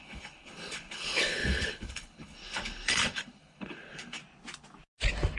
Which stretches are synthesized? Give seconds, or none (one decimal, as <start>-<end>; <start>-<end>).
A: 0.0-4.2